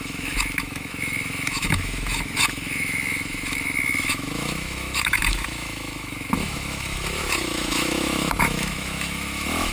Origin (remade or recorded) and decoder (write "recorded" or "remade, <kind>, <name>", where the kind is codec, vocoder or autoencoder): remade, autoencoder, DAC-VAE